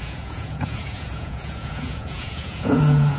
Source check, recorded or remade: remade